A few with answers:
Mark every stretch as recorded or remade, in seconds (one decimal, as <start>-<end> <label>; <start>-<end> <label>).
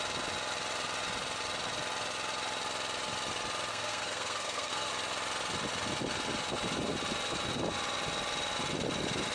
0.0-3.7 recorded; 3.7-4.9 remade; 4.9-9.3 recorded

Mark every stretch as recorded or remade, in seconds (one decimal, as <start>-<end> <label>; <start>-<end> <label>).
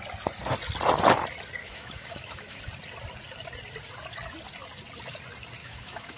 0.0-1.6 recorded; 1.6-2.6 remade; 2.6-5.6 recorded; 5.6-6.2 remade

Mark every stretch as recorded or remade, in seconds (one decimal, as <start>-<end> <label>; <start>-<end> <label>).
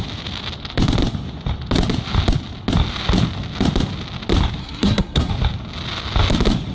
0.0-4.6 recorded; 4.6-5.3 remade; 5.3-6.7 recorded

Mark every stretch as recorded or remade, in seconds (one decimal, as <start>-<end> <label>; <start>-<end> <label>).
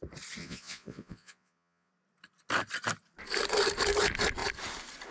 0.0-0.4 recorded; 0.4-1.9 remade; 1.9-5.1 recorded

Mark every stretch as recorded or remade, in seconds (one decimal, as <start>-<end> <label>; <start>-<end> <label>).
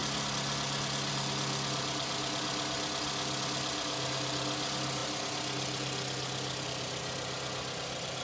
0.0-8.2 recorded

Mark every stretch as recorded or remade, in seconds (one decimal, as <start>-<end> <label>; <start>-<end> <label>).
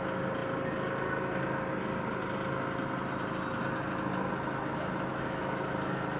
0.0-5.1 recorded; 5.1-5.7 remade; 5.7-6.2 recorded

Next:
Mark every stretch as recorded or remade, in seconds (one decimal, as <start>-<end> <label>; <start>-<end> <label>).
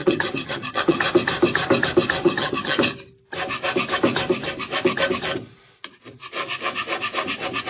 0.0-1.0 remade; 1.0-2.2 recorded; 2.2-2.8 remade; 2.8-7.7 recorded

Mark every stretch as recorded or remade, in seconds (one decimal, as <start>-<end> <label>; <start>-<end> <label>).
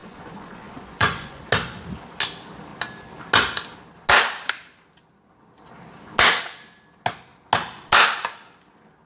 0.0-1.4 remade; 1.4-9.1 recorded